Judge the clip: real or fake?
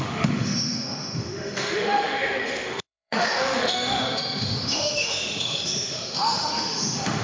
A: fake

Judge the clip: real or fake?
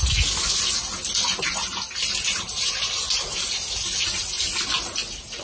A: real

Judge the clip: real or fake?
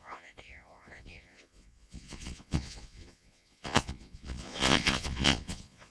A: fake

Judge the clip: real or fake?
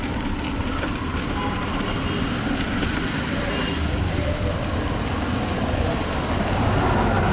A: real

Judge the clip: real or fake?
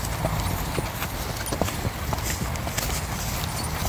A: real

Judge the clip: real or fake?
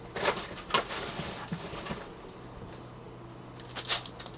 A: real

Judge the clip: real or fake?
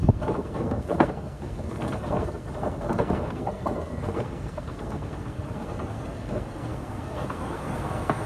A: fake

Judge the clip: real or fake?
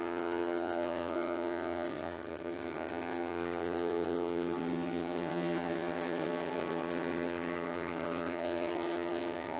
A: fake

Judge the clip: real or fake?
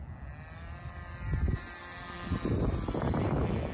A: real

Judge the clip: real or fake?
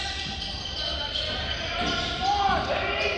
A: real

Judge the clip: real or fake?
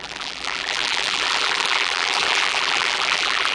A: fake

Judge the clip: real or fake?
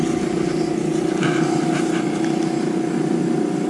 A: real